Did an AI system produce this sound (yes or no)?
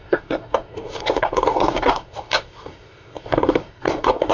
yes